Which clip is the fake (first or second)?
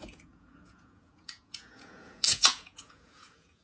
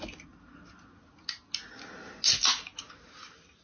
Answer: first